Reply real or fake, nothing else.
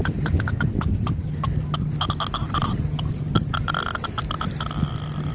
real